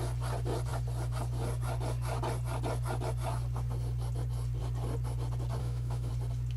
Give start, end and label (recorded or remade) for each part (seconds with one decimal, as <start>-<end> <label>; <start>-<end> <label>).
0.0-5.6 recorded; 5.6-6.1 remade; 6.1-6.6 recorded